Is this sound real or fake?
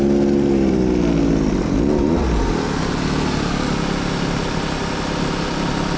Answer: real